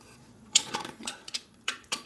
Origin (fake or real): fake